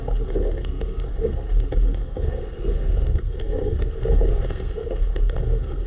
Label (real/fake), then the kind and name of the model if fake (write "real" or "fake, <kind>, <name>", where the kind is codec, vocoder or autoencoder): fake, codec, SNAC